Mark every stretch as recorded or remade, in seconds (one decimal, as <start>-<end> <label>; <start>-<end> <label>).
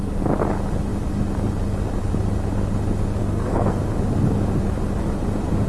0.0-3.2 recorded; 3.2-3.8 remade; 3.8-5.7 recorded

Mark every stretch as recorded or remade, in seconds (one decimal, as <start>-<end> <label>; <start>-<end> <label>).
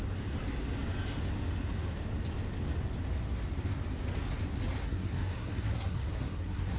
0.0-4.8 recorded; 4.8-6.8 remade